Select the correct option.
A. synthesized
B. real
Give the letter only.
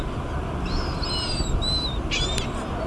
B